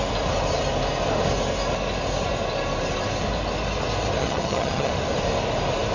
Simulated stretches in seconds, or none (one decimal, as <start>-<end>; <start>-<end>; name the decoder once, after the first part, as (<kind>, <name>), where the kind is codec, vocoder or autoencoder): 4.2-4.9 (vocoder, HiFi-GAN)